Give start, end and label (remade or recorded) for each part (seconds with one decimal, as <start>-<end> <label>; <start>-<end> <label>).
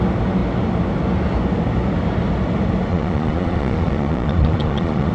0.0-2.9 recorded; 2.9-5.1 remade